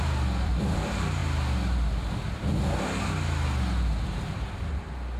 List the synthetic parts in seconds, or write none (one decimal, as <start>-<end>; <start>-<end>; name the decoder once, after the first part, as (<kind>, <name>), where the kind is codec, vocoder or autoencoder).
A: 0.0-1.2 (vocoder, BigVGAN v2); 4.3-5.2